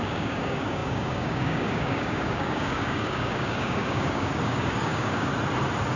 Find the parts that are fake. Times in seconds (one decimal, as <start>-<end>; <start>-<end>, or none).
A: 0.0-5.3